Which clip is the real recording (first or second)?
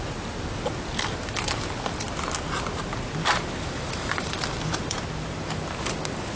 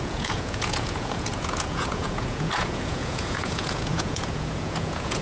first